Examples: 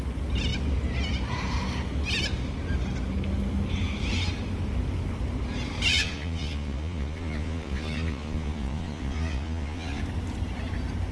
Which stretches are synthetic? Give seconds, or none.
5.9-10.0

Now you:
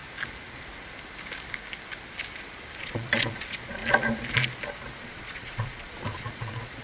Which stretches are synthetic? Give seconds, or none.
2.8-3.8; 5.0-6.8

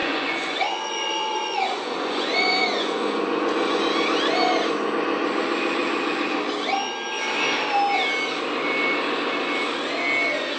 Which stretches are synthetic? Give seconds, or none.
0.0-3.8

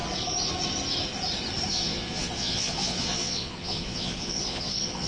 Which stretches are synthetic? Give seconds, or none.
1.7-5.1

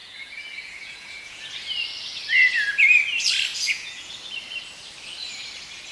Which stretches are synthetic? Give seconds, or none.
0.0-1.4; 3.5-4.1

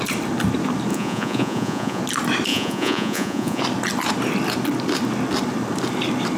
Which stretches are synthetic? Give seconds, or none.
0.9-2.0; 2.5-3.6

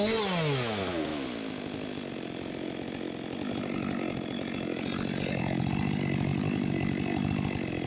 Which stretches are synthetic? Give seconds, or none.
none

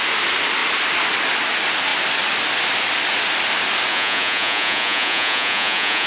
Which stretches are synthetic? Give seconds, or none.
3.9-6.1